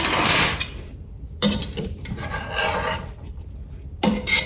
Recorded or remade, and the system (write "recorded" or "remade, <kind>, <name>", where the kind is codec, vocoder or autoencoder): remade, vocoder, BigVGAN v2